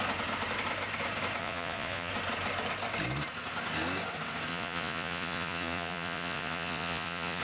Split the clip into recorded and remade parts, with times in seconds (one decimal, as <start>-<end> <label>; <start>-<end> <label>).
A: 0.0-1.4 recorded; 1.4-2.1 remade; 2.1-4.5 recorded; 4.5-7.4 remade